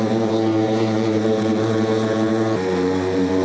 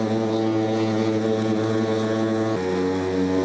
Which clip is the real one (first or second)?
second